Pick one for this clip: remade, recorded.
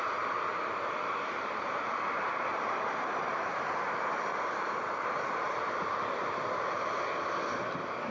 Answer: remade